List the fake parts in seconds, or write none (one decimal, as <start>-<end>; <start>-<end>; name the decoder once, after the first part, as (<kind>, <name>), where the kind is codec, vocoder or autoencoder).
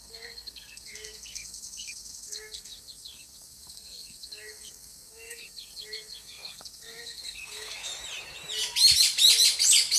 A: 0.0-7.9 (codec, SNAC)